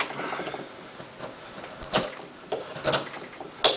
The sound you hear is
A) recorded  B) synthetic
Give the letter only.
A